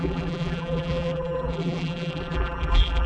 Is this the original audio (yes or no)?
no